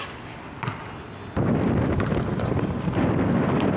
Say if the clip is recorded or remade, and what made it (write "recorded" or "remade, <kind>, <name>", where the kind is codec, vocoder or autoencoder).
recorded